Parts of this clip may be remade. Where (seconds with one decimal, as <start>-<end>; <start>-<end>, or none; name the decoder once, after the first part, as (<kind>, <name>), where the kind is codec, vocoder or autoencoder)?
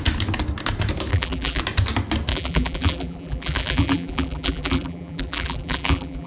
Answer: 1.1-1.6 (vocoder, BigVGAN v2); 2.3-6.3